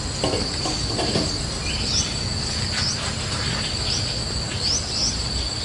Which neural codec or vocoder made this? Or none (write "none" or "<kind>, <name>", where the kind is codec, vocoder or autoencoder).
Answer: none